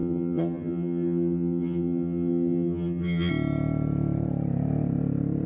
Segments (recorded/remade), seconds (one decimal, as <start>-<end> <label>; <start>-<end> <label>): 0.0-3.3 remade; 3.3-5.5 recorded